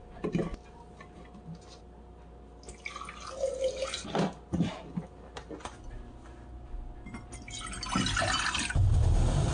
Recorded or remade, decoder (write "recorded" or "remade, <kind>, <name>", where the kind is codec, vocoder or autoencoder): recorded